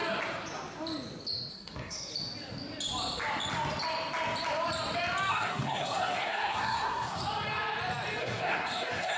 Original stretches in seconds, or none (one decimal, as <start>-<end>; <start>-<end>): 0.0-1.5; 2.1-5.3; 7.2-8.2